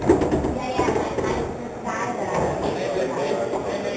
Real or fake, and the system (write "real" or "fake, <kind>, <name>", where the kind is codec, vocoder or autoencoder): real